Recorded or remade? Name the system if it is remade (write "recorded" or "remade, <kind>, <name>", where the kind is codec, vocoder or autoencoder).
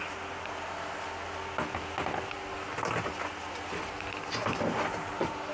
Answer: recorded